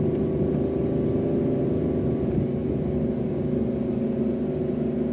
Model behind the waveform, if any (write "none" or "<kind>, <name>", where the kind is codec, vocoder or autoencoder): none